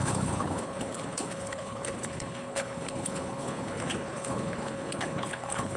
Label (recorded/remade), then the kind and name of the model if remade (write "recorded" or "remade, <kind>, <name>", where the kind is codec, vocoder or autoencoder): remade, codec, HILCodec